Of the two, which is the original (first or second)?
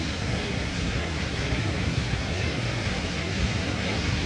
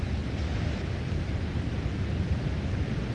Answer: second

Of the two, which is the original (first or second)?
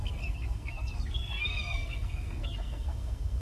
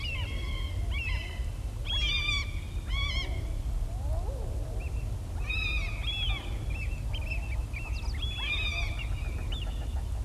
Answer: second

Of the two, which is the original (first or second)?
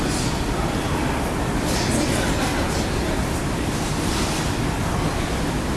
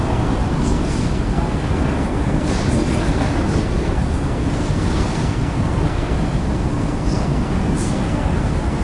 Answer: first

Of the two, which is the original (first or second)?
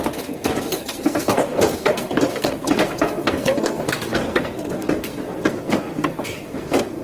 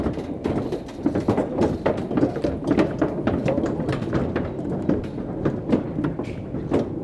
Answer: second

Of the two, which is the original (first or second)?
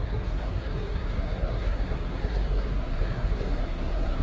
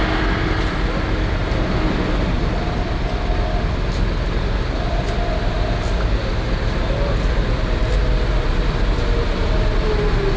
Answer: second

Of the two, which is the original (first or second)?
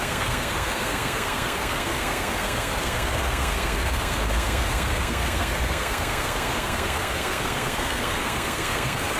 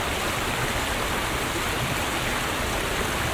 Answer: second